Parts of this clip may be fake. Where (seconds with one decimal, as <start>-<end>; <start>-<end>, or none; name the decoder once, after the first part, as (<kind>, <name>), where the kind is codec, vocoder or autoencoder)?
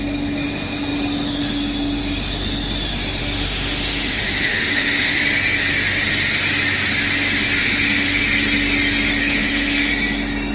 3.2-5.2 (autoencoder, DAC-VAE); 7.6-8.2; 9.2-9.9